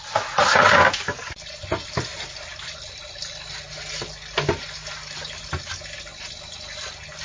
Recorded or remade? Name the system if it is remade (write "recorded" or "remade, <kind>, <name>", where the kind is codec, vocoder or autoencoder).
recorded